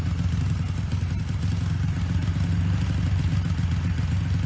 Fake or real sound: real